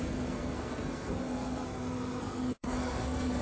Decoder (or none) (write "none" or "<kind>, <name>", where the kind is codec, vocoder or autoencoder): codec, SNAC